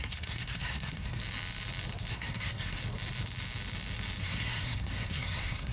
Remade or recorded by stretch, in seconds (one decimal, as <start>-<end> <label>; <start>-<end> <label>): 0.0-1.2 remade; 1.2-2.1 recorded; 2.1-2.8 remade; 2.8-4.2 recorded; 4.2-5.7 remade